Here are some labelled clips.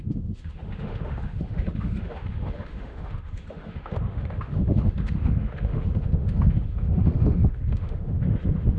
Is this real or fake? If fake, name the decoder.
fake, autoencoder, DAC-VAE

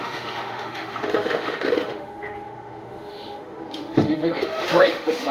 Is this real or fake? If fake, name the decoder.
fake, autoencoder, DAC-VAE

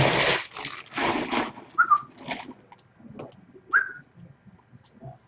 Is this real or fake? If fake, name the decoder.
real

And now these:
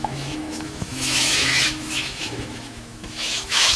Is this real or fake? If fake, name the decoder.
fake, autoencoder, DAC-VAE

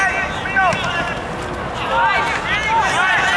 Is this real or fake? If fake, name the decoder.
real